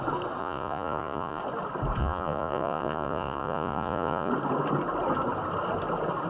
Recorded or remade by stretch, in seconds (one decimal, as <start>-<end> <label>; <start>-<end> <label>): 0.0-0.4 recorded; 0.4-1.4 remade; 1.4-2.0 recorded; 2.0-4.3 remade; 4.3-6.3 recorded